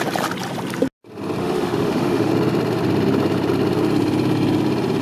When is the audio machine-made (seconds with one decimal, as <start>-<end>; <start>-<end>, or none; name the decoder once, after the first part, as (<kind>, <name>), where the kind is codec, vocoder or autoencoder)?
1.4-2.3 (autoencoder, DAC-VAE)

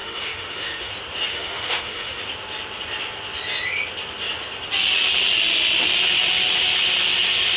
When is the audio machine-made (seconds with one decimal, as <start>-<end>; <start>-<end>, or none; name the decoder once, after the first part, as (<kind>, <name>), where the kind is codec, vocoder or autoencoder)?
0.0-0.9 (autoencoder, DAC-VAE); 1.3-2.2

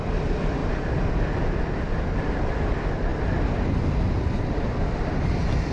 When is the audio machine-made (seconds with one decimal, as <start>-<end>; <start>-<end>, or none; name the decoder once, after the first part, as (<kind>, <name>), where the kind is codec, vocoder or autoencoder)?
none

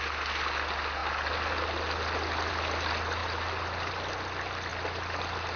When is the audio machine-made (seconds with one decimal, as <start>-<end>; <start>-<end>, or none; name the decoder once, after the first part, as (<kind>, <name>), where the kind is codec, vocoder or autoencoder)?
3.2-3.9 (vocoder, BigVGAN v2); 4.7-5.6

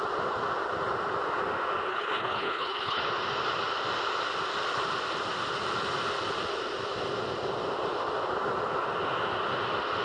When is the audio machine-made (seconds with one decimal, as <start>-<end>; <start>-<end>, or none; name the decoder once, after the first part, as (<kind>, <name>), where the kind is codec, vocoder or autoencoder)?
1.9-3.0 (codec, HILCodec)

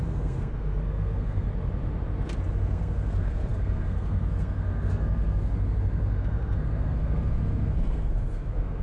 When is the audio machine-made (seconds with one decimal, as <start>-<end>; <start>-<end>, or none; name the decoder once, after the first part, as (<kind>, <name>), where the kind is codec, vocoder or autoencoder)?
0.0-1.5 (codec, SNAC); 2.5-8.8

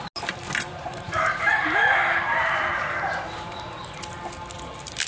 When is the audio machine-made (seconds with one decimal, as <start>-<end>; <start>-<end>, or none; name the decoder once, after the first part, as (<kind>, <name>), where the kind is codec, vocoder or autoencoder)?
0.7-3.8 (vocoder, BigVGAN v2)

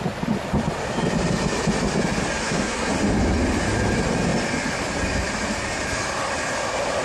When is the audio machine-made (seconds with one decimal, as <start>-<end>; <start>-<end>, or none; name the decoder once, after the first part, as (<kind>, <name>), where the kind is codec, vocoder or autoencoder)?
2.4-2.9 (codec, SNAC)